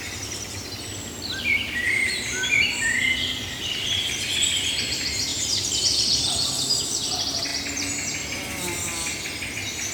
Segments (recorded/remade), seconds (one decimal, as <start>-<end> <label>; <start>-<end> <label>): 0.0-5.3 recorded; 5.3-6.8 remade; 6.8-9.9 recorded